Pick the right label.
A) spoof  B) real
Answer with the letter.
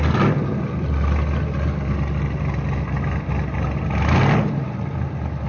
B